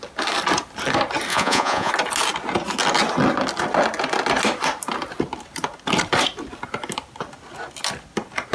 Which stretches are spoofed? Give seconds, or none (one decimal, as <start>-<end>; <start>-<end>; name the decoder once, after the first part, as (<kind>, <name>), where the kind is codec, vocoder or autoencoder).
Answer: 1.3-1.9 (vocoder, Vocos)